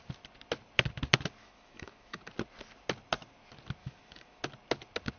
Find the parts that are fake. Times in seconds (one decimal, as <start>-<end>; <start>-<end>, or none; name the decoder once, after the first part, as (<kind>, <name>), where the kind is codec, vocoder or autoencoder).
1.4-2.2 (autoencoder, DAC-VAE); 3.8-4.4